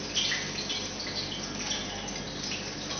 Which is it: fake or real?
real